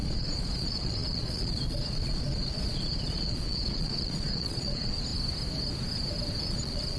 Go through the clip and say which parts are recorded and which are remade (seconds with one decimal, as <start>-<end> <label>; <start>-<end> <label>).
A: 0.0-5.1 remade; 5.1-6.4 recorded; 6.4-7.0 remade